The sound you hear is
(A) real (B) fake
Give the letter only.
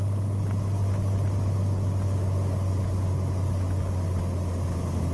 A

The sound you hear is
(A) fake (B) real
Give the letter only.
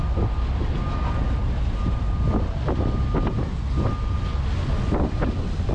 B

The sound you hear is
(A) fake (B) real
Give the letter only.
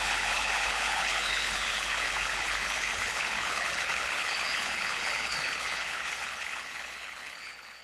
A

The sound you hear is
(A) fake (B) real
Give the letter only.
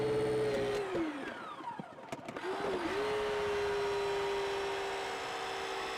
B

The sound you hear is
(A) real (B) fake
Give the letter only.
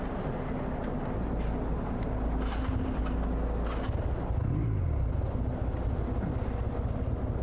A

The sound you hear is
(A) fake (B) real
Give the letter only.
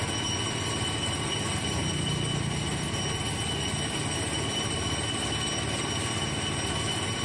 B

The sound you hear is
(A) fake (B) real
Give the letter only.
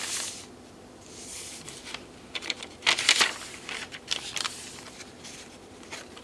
A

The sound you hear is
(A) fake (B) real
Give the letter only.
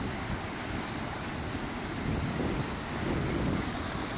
B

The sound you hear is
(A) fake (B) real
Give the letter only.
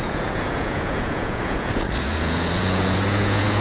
A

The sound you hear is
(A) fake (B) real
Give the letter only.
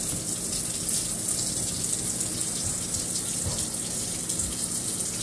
B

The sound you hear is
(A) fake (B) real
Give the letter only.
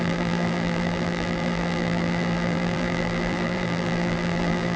A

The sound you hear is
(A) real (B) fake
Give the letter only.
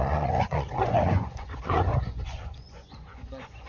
B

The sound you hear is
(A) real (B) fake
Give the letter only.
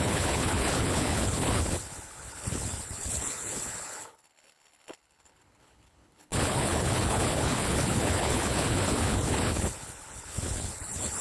B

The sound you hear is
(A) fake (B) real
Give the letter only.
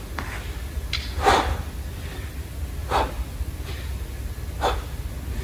B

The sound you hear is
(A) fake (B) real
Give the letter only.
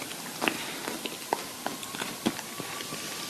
B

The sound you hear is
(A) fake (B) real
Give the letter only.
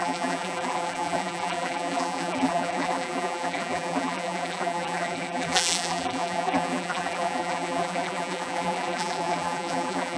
A